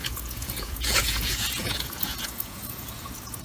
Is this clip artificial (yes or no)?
yes